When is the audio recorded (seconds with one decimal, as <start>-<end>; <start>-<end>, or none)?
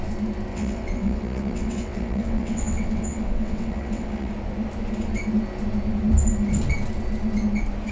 0.0-0.5; 4.3-7.9